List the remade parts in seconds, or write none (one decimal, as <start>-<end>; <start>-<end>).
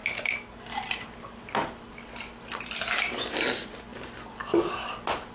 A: none